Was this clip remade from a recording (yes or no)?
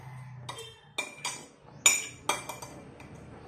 no